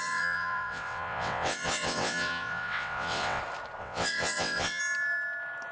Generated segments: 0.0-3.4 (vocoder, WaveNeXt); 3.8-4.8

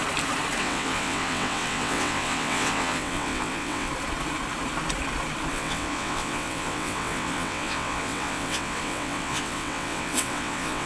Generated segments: 0.6-3.9 (vocoder, WaveNeXt); 5.5-10.9